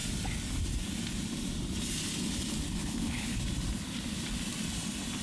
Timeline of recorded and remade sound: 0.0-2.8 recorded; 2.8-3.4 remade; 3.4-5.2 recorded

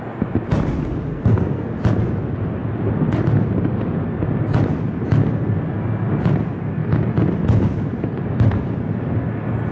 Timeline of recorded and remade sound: 0.0-1.1 recorded; 1.1-1.7 remade; 1.7-9.7 recorded

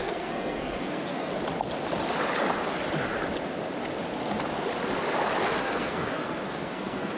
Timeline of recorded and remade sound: 0.0-1.3 remade; 1.3-5.6 recorded; 5.6-7.2 remade